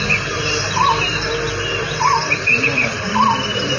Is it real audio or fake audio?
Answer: fake